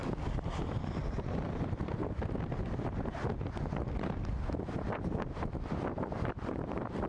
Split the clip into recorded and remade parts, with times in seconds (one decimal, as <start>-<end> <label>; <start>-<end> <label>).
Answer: 0.0-2.0 remade; 2.0-3.1 recorded; 3.1-7.1 remade